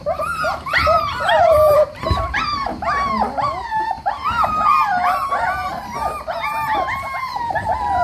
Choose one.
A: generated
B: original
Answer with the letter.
B